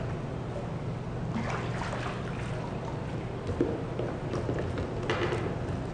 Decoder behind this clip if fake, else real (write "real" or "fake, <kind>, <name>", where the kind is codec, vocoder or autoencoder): real